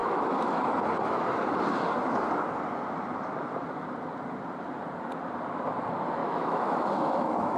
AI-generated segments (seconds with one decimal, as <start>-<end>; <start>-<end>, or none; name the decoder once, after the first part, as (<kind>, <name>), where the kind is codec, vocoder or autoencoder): 0.0-0.6 (autoencoder, DAC-VAE); 6.2-7.6